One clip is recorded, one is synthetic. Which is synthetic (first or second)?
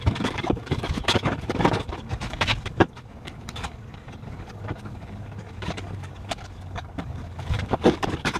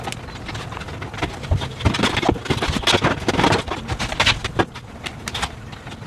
first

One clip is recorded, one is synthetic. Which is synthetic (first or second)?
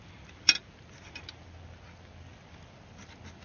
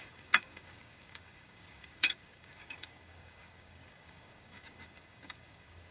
second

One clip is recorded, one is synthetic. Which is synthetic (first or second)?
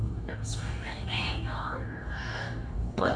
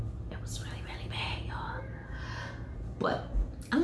first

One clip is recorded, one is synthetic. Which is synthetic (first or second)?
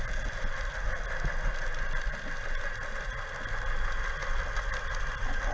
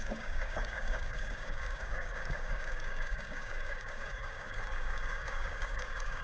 second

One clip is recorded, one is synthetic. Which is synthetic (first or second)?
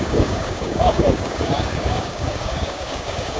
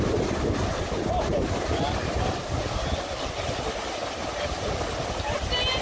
first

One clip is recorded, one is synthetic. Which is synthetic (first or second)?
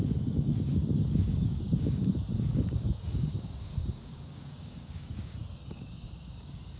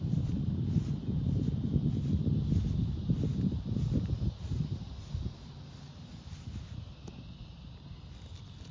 first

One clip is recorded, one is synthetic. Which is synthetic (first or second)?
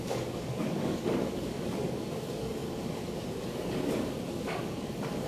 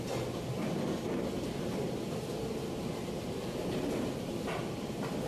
first